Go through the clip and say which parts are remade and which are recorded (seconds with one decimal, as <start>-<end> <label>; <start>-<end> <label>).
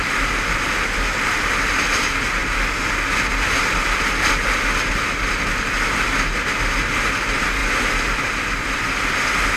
0.0-9.6 recorded